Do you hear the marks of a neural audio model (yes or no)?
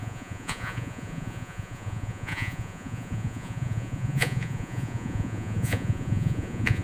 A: yes